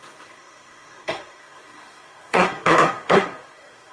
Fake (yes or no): yes